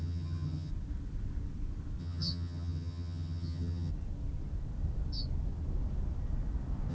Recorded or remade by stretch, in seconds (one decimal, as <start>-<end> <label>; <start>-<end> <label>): 0.0-0.7 remade; 0.7-2.0 recorded; 2.0-3.9 remade; 3.9-6.9 recorded